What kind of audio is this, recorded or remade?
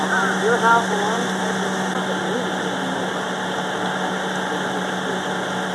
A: recorded